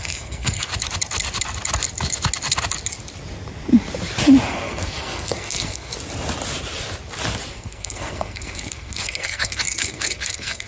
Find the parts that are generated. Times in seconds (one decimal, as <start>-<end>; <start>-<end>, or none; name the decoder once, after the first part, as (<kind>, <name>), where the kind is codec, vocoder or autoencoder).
0.0-0.7 (codec, SNAC); 4.5-5.9; 7.5-10.7